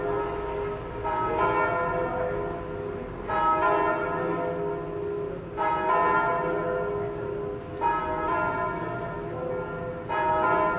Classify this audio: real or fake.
real